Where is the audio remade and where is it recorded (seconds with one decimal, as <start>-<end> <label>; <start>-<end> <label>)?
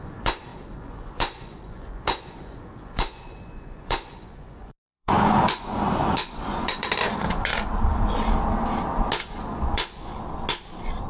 0.0-7.5 remade; 7.5-9.2 recorded; 9.2-10.1 remade; 10.1-11.1 recorded